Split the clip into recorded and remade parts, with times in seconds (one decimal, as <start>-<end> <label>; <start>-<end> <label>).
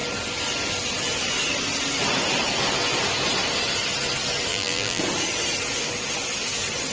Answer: 0.0-4.5 recorded; 4.5-5.0 remade; 5.0-6.9 recorded